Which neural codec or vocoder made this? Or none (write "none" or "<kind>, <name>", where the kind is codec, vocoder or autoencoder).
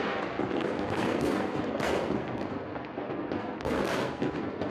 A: codec, SNAC